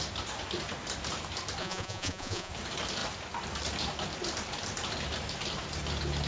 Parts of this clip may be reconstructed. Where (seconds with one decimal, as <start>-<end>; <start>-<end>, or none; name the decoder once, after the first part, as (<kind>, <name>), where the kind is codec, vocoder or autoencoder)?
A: 1.6-2.5 (vocoder, Vocos)

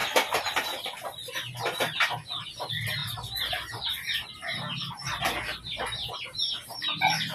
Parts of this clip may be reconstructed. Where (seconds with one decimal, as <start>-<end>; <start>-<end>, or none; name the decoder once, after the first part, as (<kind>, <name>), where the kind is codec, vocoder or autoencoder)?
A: none

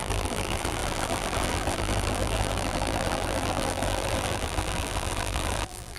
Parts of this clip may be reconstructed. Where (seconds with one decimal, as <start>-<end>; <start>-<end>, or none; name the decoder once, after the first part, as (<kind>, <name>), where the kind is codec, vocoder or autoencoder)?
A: 0.0-6.0 (vocoder, BigVGAN v2)